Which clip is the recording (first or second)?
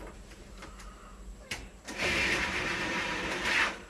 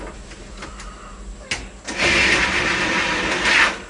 second